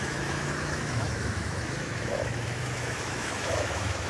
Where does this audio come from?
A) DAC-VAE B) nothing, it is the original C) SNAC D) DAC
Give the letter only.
A